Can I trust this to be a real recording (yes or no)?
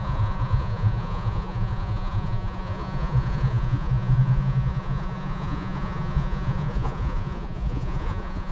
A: no